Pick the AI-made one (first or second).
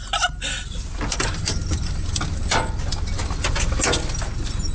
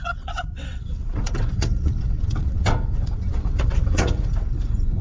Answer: second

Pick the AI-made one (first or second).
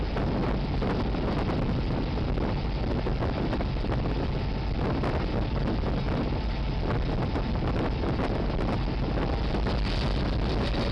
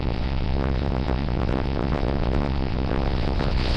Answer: second